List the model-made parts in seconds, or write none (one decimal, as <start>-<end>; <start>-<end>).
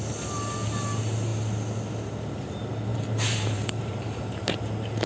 2.9-4.3